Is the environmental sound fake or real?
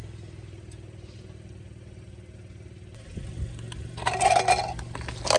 real